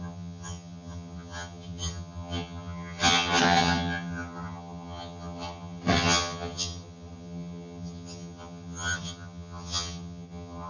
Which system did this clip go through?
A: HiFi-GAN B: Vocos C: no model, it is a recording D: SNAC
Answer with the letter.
A